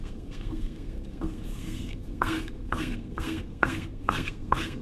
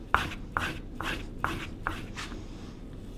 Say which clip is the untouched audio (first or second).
second